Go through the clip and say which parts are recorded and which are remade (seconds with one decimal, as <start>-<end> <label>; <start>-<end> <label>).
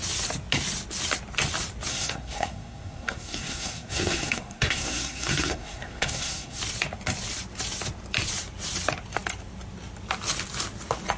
0.0-1.9 recorded; 1.9-6.6 remade; 6.6-11.2 recorded